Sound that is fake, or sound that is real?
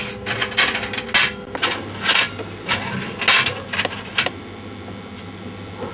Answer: real